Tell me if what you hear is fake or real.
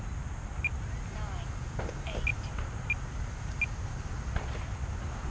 real